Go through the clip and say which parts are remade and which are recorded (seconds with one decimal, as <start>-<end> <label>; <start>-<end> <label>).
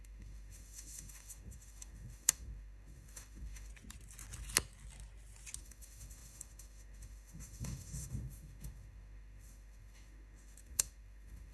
0.0-3.7 remade; 3.7-5.6 recorded; 5.6-11.5 remade